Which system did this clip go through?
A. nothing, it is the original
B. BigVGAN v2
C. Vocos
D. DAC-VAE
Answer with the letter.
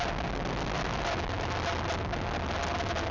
A